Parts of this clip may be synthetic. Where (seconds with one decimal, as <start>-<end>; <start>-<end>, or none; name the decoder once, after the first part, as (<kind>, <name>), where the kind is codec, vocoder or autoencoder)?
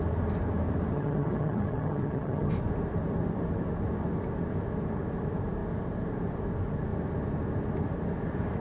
0.9-2.5 (vocoder, HiFi-GAN)